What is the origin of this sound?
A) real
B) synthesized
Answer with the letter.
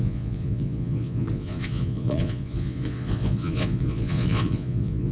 B